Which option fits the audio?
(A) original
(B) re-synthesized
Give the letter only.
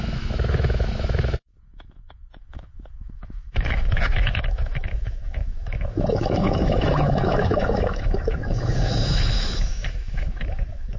B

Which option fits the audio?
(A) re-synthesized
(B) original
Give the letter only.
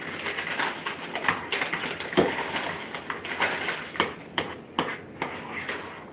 B